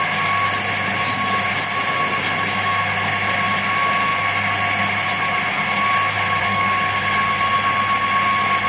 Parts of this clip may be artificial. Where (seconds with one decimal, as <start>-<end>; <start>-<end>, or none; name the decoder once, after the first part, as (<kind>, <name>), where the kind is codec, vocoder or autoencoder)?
6.5-7.0 (codec, DAC)